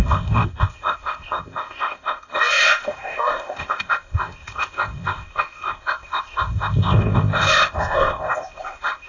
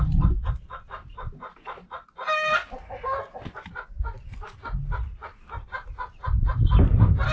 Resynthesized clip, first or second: first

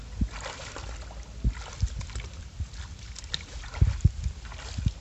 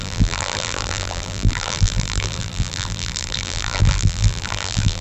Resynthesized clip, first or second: second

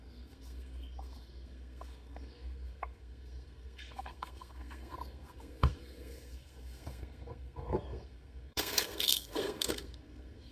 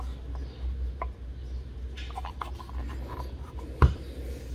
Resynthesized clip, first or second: first